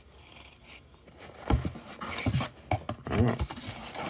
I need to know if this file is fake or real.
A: real